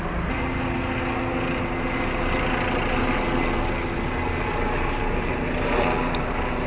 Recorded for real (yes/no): yes